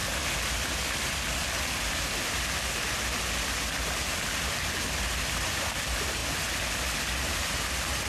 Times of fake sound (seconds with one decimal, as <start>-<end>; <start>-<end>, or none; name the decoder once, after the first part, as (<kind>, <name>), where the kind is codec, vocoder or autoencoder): none